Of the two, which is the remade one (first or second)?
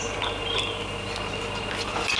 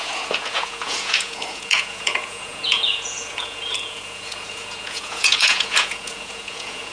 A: second